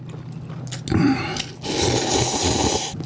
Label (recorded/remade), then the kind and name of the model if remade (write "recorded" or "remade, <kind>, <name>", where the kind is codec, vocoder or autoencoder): recorded